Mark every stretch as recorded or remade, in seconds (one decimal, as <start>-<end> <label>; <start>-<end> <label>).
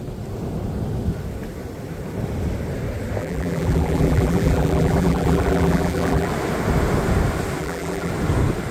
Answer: 0.0-3.2 recorded; 3.2-6.3 remade; 6.3-7.6 recorded; 7.6-8.1 remade; 8.1-8.7 recorded